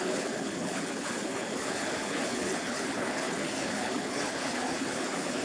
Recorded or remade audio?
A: remade